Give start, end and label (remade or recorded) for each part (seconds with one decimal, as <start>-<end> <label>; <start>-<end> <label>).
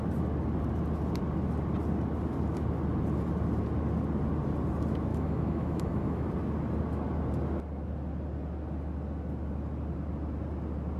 0.0-5.1 recorded; 5.1-6.3 remade; 6.3-11.0 recorded